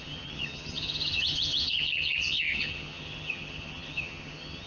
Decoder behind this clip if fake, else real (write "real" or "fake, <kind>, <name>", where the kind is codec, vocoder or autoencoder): fake, vocoder, HiFi-GAN